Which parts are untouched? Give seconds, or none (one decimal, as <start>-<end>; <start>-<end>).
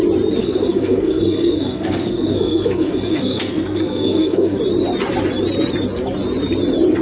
0.0-0.4; 4.6-7.0